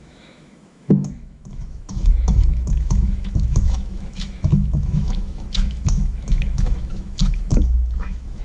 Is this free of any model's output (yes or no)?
no